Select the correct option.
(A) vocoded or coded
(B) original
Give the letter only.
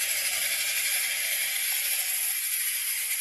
A